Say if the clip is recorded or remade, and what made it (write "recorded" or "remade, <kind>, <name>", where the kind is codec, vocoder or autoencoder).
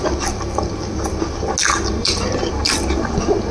recorded